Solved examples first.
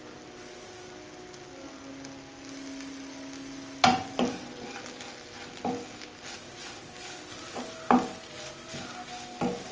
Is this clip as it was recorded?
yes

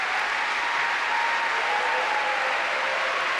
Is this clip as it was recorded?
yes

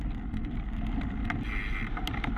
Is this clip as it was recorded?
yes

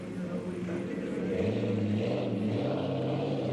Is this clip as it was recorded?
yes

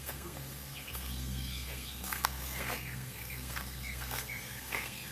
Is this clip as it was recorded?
no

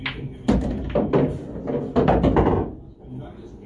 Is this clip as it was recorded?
yes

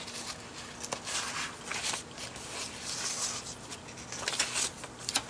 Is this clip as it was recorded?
yes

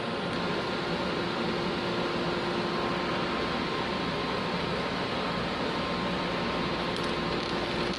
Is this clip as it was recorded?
yes